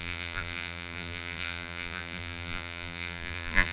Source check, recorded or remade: remade